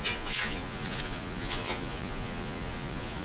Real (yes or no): no